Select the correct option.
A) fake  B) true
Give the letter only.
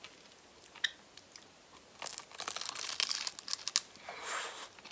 B